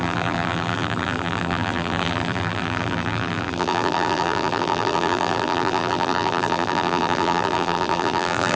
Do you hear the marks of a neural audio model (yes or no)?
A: yes